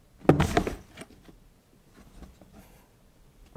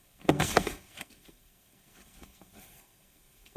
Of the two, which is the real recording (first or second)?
first